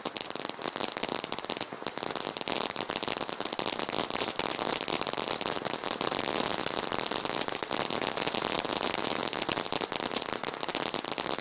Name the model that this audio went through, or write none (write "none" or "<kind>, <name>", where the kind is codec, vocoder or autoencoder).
none